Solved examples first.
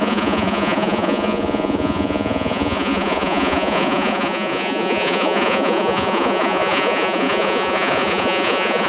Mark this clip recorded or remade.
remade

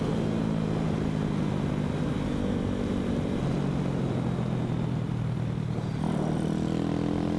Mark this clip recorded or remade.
recorded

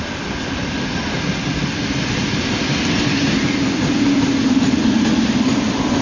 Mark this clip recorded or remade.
recorded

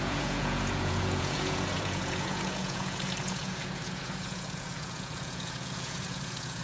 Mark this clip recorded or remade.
remade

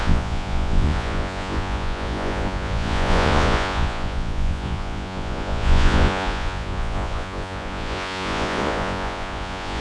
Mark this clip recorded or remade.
remade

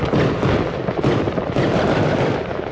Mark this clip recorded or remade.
recorded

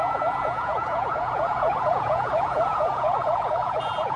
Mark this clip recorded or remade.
remade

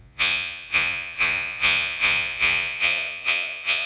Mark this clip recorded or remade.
remade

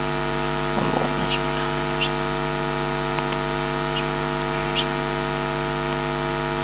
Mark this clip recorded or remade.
recorded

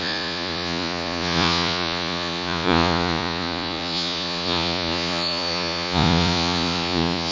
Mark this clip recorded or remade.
remade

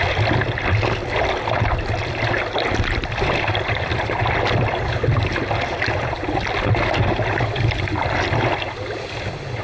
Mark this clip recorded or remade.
recorded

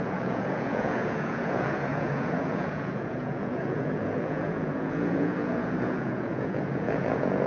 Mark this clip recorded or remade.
remade